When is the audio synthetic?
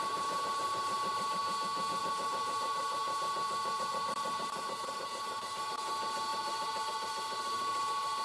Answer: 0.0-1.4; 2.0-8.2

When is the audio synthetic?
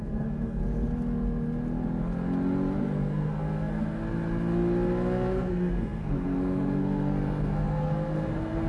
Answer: 0.0-0.6; 2.8-4.0; 5.3-8.7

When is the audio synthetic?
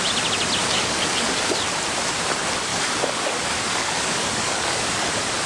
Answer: 0.6-1.5; 2.7-5.1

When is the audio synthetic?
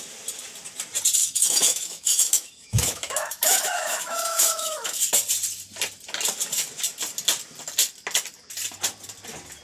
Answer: 1.2-5.0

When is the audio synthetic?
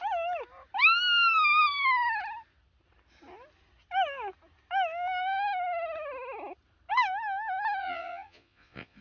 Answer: 7.8-9.0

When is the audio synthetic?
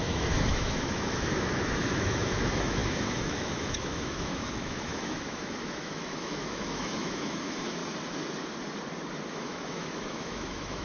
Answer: 0.0-7.8; 9.3-10.8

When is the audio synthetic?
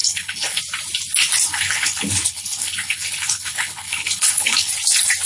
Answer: 0.0-0.6; 1.5-4.7